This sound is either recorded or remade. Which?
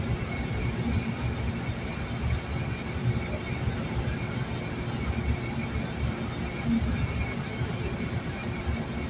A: recorded